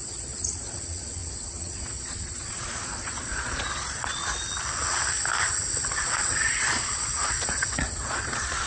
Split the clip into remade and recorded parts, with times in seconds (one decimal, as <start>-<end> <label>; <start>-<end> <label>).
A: 0.0-4.2 remade; 4.2-5.8 recorded; 5.8-8.7 remade